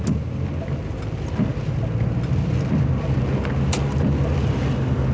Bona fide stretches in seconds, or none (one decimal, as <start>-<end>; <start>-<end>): 0.0-5.1